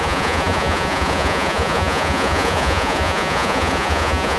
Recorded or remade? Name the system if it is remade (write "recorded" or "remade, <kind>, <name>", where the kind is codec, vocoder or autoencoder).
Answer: remade, vocoder, Vocos